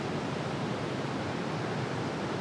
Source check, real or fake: real